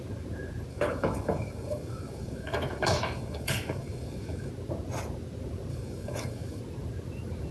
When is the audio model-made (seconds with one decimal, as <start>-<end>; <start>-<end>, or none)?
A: 0.7-4.5; 5.7-6.6